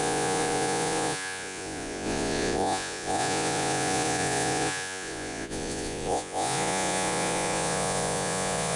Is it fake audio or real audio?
fake